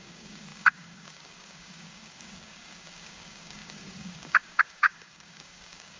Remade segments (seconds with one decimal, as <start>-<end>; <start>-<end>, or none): 0.0-6.0